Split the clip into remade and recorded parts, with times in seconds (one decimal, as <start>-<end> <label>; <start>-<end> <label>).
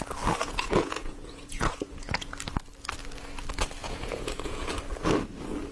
0.0-0.4 recorded; 0.4-2.3 remade; 2.3-3.8 recorded; 3.8-4.7 remade; 4.7-5.7 recorded